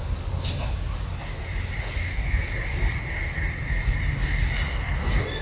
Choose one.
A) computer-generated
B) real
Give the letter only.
B